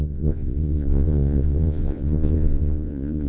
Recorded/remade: remade